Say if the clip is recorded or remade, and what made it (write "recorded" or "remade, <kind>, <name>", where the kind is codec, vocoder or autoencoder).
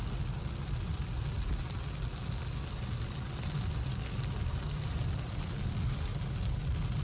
recorded